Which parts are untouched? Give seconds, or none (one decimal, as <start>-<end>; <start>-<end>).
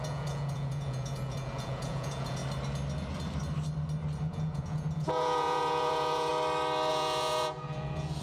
2.4-4.2; 6.3-6.9